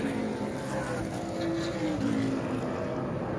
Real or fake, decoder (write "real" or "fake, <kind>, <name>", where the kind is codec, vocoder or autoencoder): real